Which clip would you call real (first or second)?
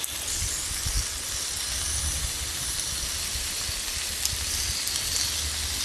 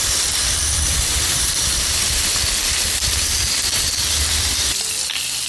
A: first